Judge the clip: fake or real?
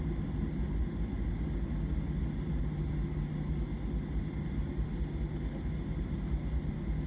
real